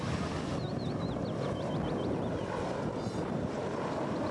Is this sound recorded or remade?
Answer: recorded